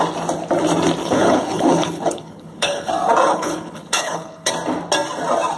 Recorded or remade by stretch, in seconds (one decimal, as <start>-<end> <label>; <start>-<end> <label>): 0.0-1.0 recorded; 1.0-2.9 remade; 2.9-3.3 recorded; 3.3-4.5 remade; 4.5-5.6 recorded